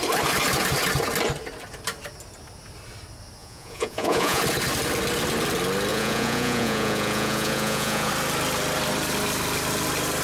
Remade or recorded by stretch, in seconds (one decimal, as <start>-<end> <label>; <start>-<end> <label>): 0.0-3.4 recorded; 3.4-4.4 remade; 4.4-5.9 recorded; 5.9-8.1 remade; 8.1-10.2 recorded